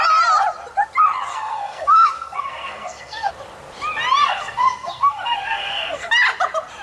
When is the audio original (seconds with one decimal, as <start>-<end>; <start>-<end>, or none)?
0.0-1.3; 3.3-4.2; 6.1-6.8